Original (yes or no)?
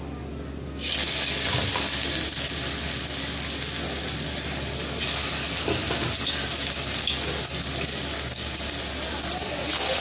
yes